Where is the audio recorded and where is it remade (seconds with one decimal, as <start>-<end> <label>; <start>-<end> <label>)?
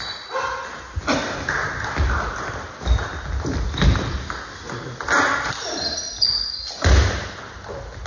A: 0.0-8.1 recorded